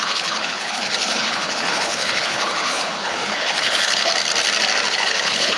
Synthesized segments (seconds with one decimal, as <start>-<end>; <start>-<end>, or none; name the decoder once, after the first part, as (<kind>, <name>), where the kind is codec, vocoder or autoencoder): 0.0-4.1 (codec, HILCodec); 4.9-5.6